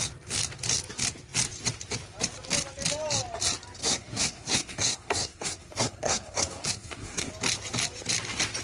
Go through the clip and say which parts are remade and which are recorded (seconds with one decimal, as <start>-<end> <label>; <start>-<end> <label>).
0.0-3.8 recorded; 3.8-7.3 remade; 7.3-8.6 recorded